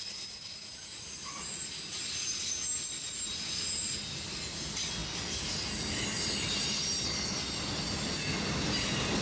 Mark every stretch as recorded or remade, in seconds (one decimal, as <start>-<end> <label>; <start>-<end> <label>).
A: 0.0-9.2 recorded